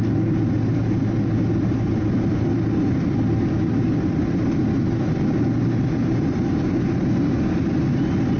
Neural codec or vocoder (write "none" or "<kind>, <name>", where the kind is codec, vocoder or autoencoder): none